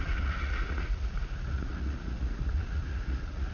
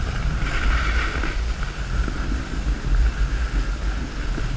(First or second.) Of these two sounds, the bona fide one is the second